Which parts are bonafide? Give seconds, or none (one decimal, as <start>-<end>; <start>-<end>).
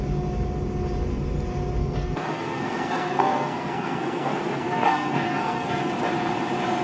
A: 0.0-1.8; 5.9-6.8